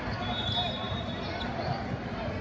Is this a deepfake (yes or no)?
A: no